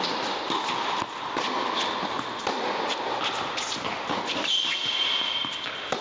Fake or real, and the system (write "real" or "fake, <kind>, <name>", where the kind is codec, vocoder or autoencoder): real